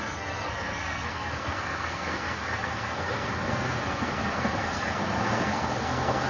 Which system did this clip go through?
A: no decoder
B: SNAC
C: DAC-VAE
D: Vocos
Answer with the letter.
B